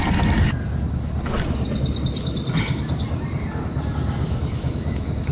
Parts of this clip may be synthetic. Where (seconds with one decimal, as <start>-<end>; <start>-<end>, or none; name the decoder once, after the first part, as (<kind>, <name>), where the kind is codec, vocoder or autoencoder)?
4.2-5.3 (autoencoder, DAC-VAE)